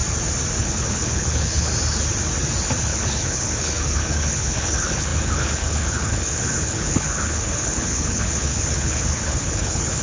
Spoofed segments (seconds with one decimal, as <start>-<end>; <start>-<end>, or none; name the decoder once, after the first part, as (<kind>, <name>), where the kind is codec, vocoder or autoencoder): 0.6-1.7 (codec, HILCodec); 2.8-10.0

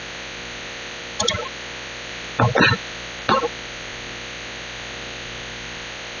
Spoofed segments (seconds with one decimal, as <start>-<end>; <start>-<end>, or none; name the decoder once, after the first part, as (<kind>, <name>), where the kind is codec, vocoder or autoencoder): none

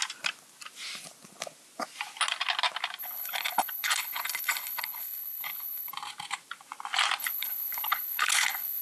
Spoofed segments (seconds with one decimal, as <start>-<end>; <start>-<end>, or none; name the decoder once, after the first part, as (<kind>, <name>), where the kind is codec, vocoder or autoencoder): 3.0-5.9 (codec, HILCodec); 7.2-8.8

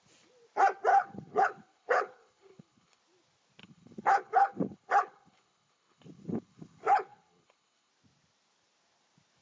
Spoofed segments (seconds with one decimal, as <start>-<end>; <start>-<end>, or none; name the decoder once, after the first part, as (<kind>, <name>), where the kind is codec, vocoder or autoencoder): 0.9-3.0 (codec, HILCodec); 3.6-7.9